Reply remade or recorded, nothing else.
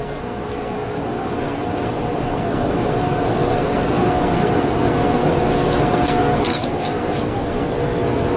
remade